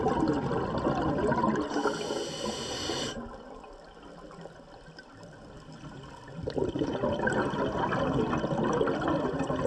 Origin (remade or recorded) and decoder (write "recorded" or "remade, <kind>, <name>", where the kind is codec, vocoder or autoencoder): recorded